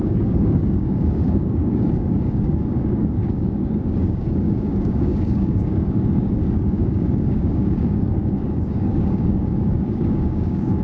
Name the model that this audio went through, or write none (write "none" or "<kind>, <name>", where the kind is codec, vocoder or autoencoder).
codec, DAC